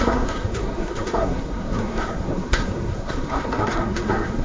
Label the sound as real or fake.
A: fake